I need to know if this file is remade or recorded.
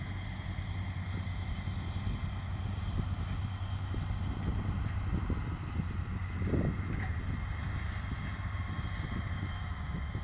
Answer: recorded